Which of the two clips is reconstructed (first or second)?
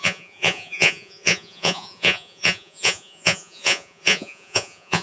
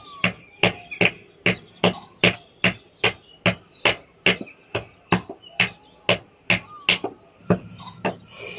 first